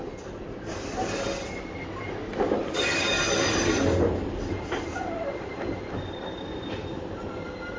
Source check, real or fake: real